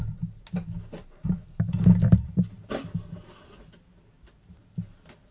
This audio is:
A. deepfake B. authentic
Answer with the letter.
B